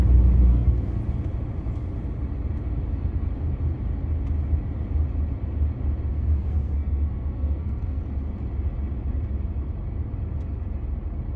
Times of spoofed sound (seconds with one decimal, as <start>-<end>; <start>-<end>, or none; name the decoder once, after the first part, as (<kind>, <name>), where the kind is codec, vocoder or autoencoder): 0.5-1.0 (codec, SNAC); 6.1-8.0